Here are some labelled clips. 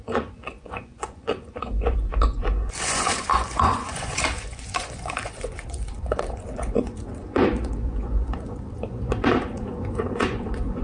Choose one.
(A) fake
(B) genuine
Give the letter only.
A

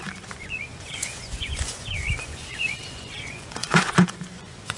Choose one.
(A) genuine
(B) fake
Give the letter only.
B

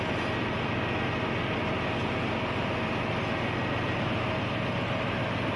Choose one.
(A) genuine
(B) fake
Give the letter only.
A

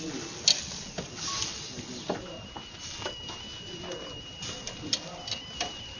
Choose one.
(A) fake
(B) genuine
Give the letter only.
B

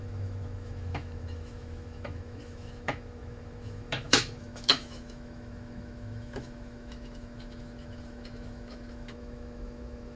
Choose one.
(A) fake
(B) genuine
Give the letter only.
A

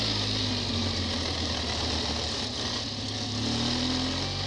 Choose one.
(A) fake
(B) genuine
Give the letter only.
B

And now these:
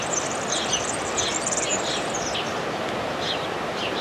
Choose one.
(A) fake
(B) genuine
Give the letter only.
A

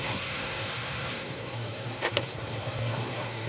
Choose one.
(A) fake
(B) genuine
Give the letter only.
A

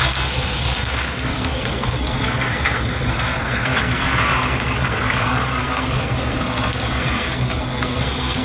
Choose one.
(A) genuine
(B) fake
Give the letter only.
B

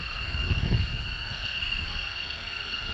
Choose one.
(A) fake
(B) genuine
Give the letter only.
A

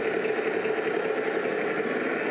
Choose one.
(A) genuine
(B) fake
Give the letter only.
A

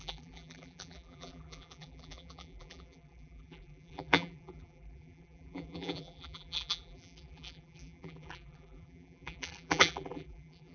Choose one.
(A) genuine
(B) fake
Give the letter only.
B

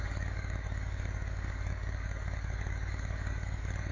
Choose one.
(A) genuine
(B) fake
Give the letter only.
B